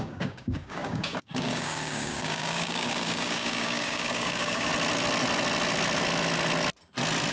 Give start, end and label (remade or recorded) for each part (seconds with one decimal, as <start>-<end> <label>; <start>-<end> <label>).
0.0-4.7 remade; 4.7-7.3 recorded